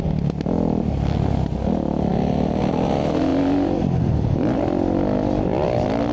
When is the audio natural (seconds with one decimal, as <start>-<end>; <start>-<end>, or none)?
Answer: 0.0-6.1